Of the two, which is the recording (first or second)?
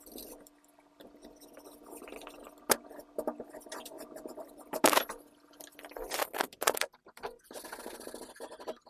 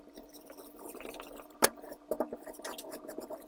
first